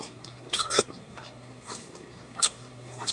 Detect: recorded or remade remade